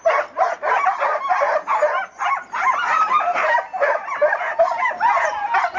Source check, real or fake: real